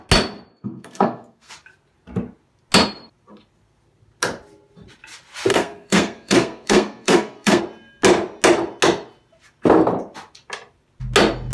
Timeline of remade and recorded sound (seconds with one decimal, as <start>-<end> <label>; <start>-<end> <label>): 0.0-0.5 recorded; 0.5-1.5 remade; 1.5-5.5 recorded; 5.5-7.6 remade; 7.6-11.5 recorded